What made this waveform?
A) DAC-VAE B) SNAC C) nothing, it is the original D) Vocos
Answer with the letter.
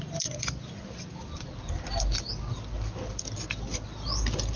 C